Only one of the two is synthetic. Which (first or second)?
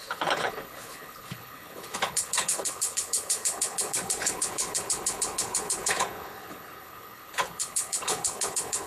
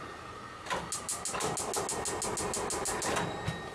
first